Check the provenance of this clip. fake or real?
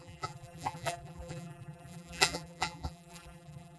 fake